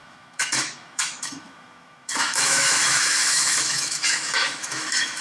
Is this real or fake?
fake